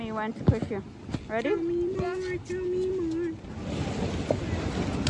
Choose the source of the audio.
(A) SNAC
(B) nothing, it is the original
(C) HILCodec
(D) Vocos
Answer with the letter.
B